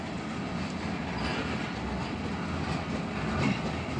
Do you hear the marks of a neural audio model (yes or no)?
no